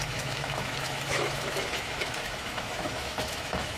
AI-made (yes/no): yes